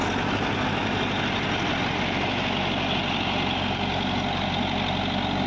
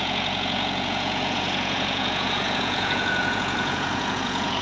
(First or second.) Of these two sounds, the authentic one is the first